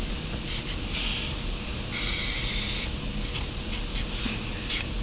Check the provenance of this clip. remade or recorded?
recorded